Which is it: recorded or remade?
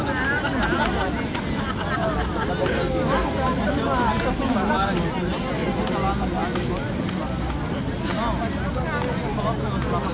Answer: recorded